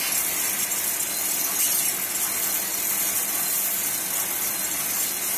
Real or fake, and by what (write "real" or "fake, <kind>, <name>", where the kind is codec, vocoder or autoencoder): real